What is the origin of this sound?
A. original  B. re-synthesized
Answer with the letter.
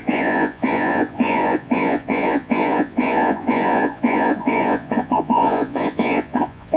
B